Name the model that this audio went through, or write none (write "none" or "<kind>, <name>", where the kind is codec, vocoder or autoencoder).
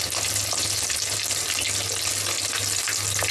none